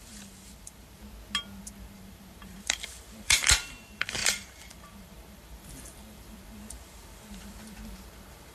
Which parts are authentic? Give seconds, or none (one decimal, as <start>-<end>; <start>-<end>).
1.0-1.6